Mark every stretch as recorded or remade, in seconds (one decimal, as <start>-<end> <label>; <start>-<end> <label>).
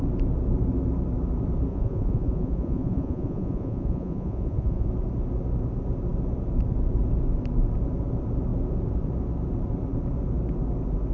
0.0-1.7 recorded; 1.7-4.9 remade; 4.9-11.1 recorded